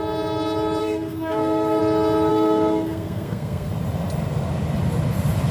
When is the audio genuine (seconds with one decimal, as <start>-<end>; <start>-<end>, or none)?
0.0-0.8; 1.8-2.3; 3.7-5.5